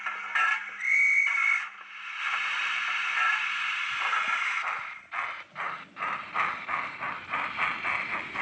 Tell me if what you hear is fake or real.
real